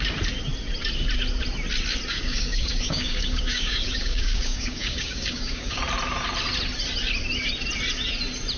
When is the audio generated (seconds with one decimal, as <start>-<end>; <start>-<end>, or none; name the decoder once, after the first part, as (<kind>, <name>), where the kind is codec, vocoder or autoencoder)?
2.1-5.8 (codec, DAC)